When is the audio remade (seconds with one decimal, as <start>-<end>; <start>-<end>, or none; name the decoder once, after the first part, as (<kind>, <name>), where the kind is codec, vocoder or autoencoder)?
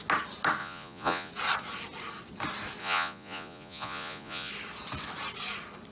0.6-1.3 (vocoder, Vocos); 2.8-4.5